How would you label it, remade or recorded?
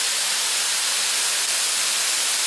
recorded